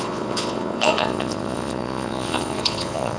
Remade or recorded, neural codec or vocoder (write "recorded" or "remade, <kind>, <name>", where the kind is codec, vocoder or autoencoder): remade, vocoder, Vocos